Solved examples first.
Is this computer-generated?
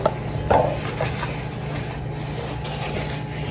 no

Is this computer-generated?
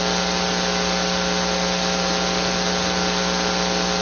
no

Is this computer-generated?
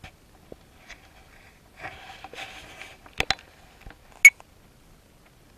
no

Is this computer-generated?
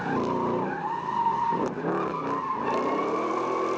no